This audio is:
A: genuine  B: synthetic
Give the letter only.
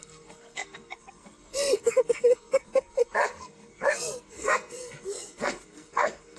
B